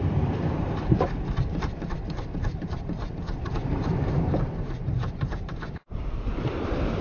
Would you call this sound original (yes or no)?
no